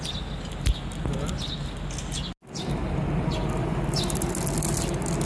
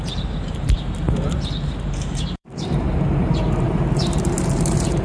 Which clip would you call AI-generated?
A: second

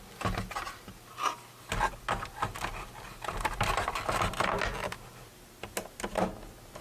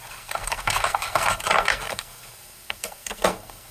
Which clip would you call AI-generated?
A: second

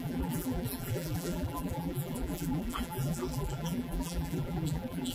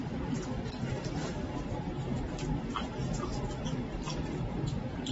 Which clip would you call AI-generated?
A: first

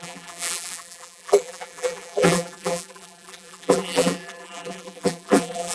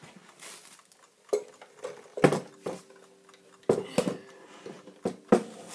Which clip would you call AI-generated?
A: first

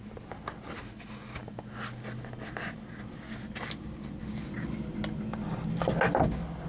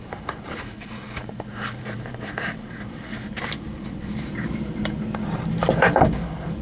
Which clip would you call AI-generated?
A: second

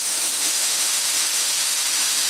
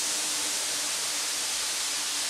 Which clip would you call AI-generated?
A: first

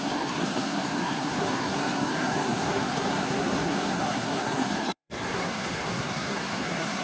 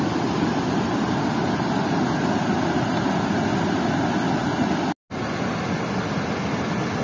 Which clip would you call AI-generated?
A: first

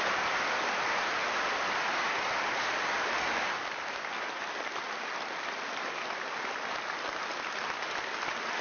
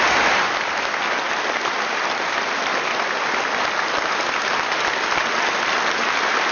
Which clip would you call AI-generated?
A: first